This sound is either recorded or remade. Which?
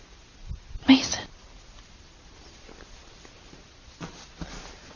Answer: recorded